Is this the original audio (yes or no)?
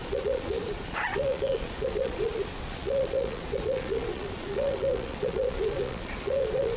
no